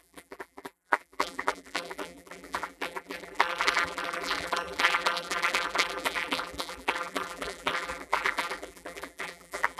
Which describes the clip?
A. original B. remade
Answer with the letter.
B